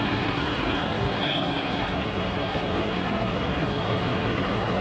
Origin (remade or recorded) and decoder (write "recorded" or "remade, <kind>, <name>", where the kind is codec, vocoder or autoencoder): remade, codec, SNAC